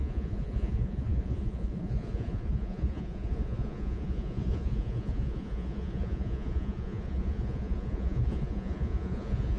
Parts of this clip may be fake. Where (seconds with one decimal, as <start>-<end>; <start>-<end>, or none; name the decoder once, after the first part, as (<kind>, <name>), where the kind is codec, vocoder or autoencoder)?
0.0-9.6 (vocoder, Vocos)